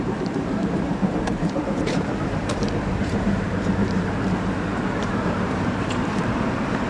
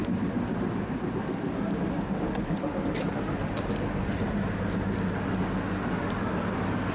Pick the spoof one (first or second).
first